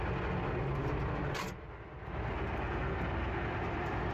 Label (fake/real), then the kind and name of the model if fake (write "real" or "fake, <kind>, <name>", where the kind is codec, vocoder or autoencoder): real